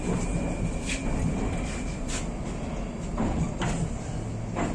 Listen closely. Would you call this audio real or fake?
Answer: real